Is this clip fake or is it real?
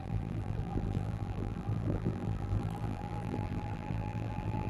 fake